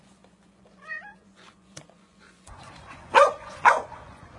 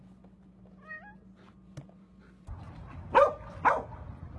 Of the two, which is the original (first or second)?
second